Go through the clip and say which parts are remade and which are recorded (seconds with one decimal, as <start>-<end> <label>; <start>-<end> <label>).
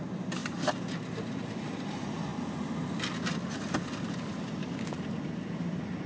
0.0-6.1 recorded